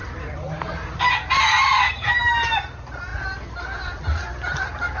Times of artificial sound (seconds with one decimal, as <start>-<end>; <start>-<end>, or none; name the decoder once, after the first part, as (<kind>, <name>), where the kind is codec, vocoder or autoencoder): 0.0-1.0 (vocoder, BigVGAN v2); 1.7-2.3

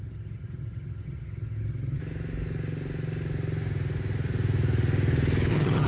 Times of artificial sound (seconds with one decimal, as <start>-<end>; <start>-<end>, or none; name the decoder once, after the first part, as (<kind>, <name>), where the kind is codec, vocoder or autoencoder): 0.0-2.0 (vocoder, HiFi-GAN); 5.5-5.9

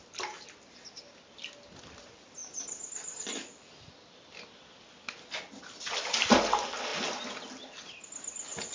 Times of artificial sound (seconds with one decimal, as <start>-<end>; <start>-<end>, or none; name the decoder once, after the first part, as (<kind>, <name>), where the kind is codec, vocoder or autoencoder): none

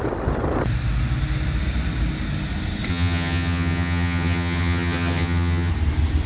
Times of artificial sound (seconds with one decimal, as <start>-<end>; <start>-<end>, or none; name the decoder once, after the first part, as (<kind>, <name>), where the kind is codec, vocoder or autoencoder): 2.9-5.7 (vocoder, HiFi-GAN)

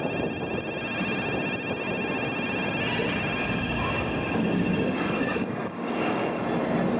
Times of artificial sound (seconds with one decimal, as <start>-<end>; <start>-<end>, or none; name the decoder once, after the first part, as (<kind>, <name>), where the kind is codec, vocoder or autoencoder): 3.4-6.4 (codec, DAC)

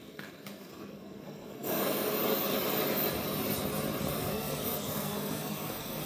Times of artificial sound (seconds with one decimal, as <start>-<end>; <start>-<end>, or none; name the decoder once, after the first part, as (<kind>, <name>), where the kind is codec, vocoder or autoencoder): 0.0-2.1 (codec, SNAC); 4.1-6.1

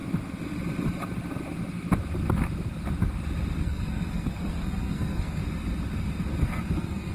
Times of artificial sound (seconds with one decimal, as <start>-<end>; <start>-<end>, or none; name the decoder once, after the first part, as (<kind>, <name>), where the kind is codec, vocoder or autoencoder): 3.6-5.4 (codec, SNAC); 6.4-7.1

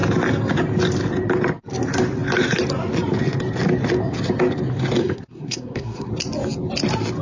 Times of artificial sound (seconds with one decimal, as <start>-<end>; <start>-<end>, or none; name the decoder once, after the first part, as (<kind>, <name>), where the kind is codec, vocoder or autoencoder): 5.0-6.1 (codec, SNAC)